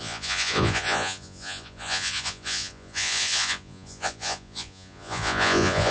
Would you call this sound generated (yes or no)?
yes